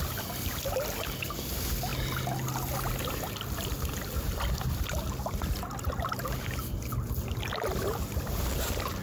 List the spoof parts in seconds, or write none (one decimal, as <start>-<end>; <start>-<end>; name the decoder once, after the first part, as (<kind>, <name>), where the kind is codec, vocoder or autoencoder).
none